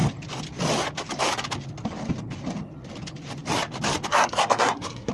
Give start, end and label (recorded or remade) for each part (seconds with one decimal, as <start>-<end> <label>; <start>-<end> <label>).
0.0-4.1 recorded; 4.1-5.1 remade